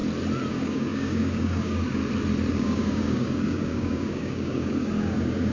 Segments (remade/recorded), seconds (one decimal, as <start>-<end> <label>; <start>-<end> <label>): 0.0-0.5 recorded; 0.5-2.0 remade; 2.0-2.5 recorded; 2.5-5.5 remade